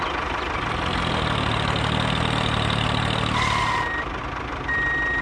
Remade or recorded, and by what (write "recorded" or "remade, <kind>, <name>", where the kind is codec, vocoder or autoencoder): recorded